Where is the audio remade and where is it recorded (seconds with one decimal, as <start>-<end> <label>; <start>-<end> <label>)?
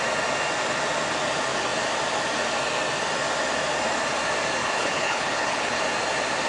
0.0-4.6 recorded; 4.6-5.8 remade; 5.8-6.5 recorded